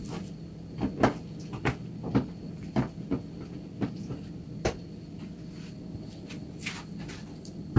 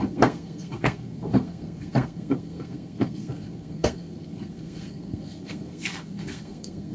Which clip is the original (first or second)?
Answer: first